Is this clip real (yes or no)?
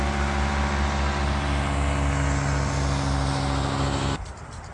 yes